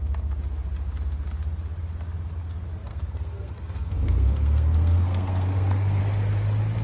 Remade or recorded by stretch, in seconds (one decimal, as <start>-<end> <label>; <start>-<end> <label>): 0.0-2.9 recorded; 2.9-6.0 remade; 6.0-6.8 recorded

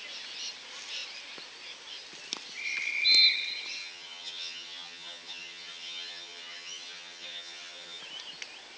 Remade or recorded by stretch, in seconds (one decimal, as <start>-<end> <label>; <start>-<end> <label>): 0.0-3.8 recorded; 3.8-8.0 remade; 8.0-8.8 recorded